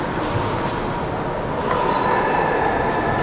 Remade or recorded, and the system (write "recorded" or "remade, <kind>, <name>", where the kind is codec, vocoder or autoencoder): recorded